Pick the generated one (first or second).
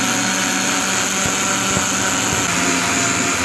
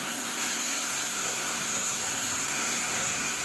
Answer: second